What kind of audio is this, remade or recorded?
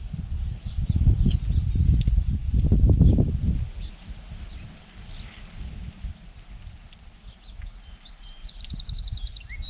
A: recorded